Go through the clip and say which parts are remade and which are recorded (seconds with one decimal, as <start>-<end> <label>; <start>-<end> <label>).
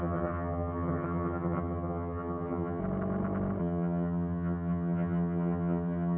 0.0-2.8 remade; 2.8-3.6 recorded; 3.6-6.2 remade